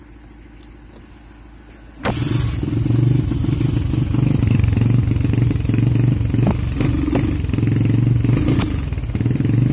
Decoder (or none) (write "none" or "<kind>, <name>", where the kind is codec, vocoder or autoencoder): none